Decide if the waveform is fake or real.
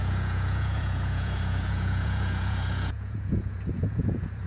fake